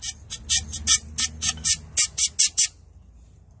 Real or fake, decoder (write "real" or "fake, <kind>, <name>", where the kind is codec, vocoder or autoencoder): real